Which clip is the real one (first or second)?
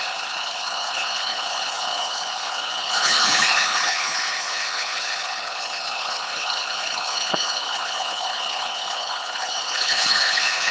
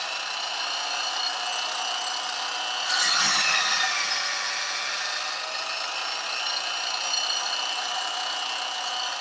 second